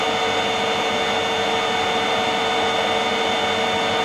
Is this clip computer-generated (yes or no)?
no